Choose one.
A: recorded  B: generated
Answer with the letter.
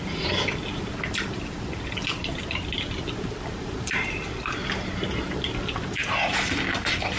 A